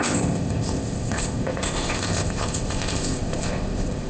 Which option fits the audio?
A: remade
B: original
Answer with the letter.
A